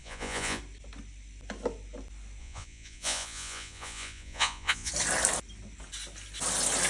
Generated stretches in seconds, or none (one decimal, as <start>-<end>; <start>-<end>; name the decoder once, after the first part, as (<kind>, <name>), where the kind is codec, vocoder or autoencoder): 0.0-0.6 (vocoder, Vocos); 2.4-4.9